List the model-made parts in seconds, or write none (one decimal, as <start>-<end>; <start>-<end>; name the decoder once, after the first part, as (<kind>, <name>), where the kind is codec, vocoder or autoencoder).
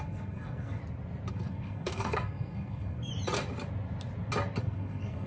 0.0-0.8 (codec, SNAC); 1.3-3.1; 4.6-5.3